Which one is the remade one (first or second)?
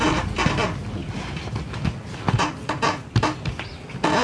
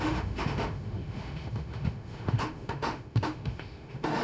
second